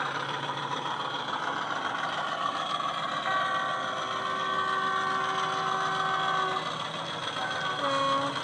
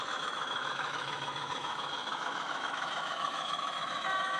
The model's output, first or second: second